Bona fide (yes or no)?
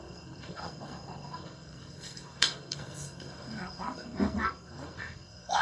no